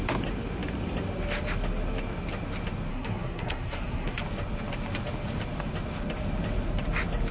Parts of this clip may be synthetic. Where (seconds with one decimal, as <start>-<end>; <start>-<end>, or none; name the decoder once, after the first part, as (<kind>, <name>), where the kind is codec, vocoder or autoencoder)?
2.9-4.2 (codec, SNAC)